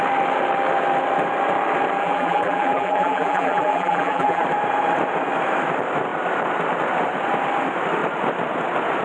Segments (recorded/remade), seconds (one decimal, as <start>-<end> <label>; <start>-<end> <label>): 0.0-2.0 recorded; 2.0-4.4 remade; 4.4-9.0 recorded